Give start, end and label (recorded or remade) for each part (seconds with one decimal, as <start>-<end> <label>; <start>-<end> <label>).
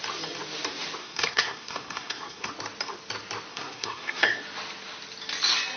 0.0-1.0 recorded; 1.0-2.5 remade; 2.5-3.5 recorded; 3.5-4.4 remade; 4.4-5.8 recorded